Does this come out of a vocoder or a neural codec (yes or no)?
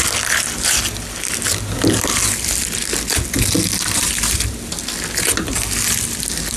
no